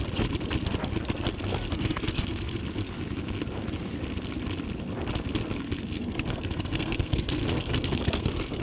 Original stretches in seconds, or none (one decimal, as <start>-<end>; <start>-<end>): 0.0-1.5; 2.6-6.0